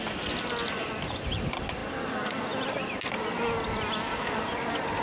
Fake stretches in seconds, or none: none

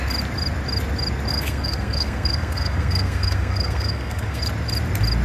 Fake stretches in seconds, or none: 1.3-4.4 (codec, SNAC)

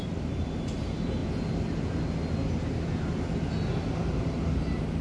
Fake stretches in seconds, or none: 0.0-1.2 (vocoder, BigVGAN v2); 4.2-5.0

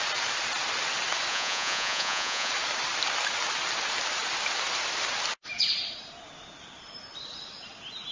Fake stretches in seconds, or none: 1.3-2.5 (vocoder, Vocos)